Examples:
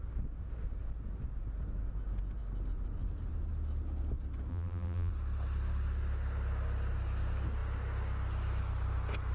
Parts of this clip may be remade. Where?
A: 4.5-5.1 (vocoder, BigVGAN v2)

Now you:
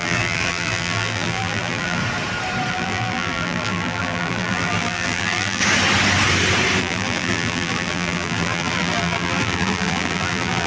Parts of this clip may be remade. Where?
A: 0.0-2.0 (vocoder, BigVGAN v2); 2.7-5.6; 6.8-10.7

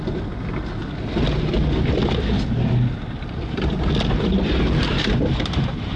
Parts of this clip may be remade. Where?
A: 4.9-6.0 (vocoder, BigVGAN v2)

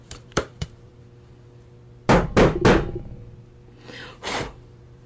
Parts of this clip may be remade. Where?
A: 0.0-0.9 (vocoder, BigVGAN v2); 4.0-5.1

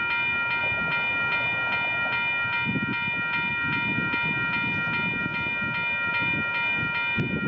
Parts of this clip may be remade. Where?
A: none